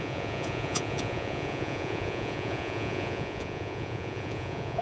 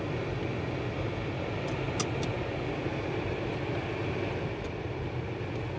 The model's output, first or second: first